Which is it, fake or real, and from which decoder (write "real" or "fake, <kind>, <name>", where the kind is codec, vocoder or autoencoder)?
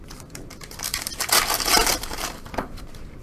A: fake, vocoder, BigVGAN v2